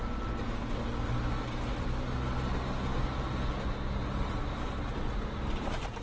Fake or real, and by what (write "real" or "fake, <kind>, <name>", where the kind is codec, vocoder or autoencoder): real